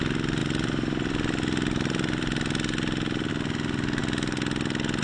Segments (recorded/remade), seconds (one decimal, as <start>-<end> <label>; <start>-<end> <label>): 0.0-0.4 recorded; 0.4-3.3 remade; 3.3-5.0 recorded